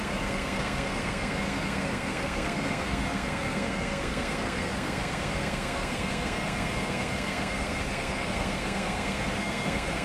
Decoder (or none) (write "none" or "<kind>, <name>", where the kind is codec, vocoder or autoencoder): codec, SNAC